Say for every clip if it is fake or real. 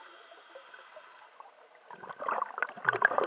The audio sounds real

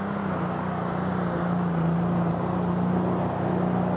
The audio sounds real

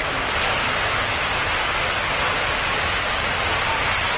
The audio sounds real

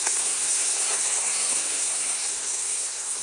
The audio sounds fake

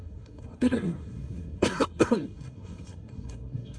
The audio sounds fake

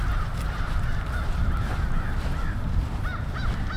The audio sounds real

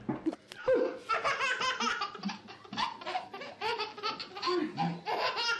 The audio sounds real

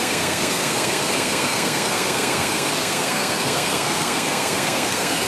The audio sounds fake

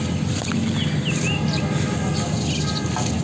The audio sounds real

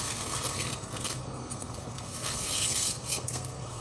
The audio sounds fake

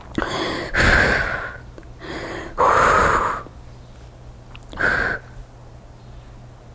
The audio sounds real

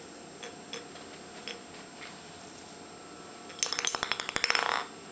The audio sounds real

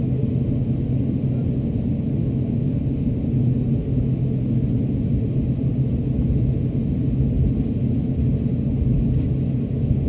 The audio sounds real